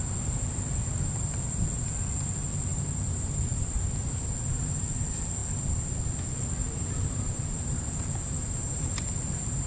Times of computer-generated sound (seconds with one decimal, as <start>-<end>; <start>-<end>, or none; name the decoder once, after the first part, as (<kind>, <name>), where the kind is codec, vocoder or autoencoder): 2.7-3.9 (vocoder, BigVGAN v2); 6.6-9.7